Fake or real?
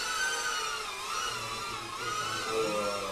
real